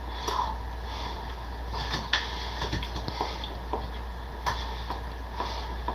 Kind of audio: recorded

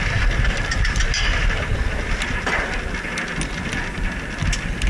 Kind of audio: recorded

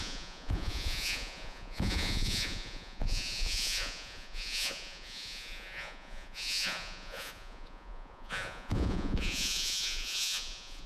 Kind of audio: remade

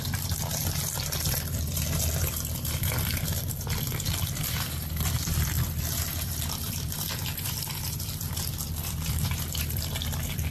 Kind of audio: remade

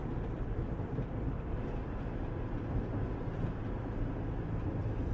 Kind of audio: recorded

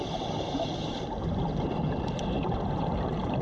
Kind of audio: remade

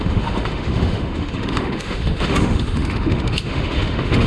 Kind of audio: remade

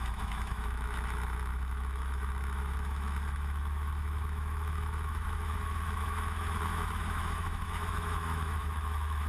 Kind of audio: remade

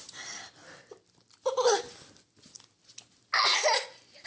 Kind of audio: recorded